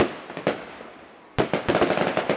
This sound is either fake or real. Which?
real